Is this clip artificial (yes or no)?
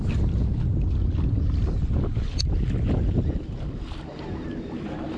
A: no